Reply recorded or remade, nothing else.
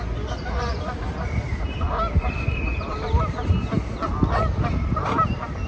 recorded